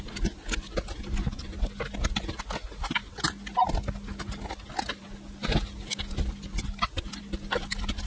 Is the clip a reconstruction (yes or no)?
no